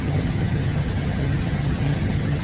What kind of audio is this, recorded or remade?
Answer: remade